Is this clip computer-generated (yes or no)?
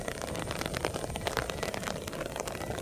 yes